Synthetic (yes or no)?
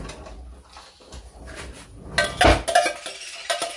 no